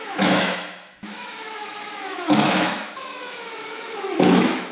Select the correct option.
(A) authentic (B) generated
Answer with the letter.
B